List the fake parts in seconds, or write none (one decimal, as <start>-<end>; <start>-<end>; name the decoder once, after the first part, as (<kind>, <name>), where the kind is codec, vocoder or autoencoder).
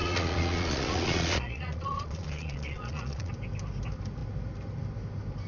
0.0-3.3 (vocoder, Vocos)